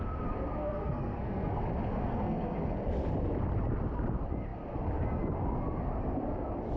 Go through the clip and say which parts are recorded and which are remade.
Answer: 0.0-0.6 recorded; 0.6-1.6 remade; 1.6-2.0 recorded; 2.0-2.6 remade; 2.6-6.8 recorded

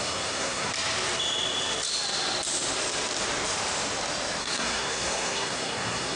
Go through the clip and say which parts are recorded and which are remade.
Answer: 0.0-0.7 remade; 0.7-4.4 recorded; 4.4-6.2 remade

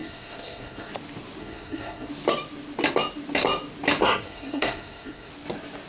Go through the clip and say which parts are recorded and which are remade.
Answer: 0.0-0.9 remade; 0.9-1.4 recorded; 1.4-2.1 remade; 2.1-4.0 recorded; 4.0-5.3 remade; 5.3-5.9 recorded

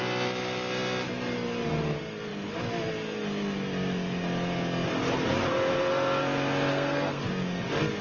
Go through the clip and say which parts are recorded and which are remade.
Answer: 0.0-6.7 recorded; 6.7-7.2 remade; 7.2-8.0 recorded

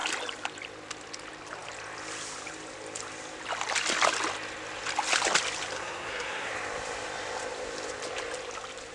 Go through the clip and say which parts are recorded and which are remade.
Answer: 0.0-5.7 recorded; 5.7-6.5 remade; 6.5-8.9 recorded

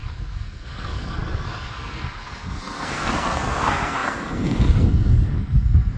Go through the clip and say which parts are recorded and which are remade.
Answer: 0.0-6.0 remade

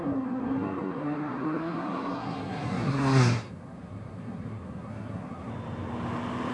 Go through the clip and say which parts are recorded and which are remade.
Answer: 0.0-5.5 remade; 5.5-6.5 recorded